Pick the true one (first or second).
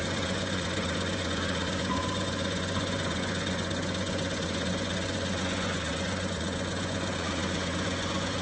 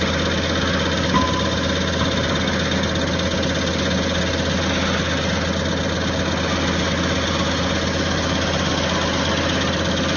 second